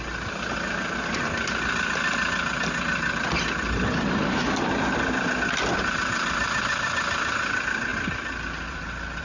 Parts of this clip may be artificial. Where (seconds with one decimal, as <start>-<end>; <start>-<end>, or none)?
7.9-9.2